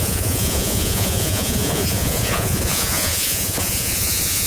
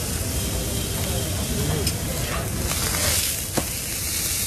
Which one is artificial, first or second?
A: first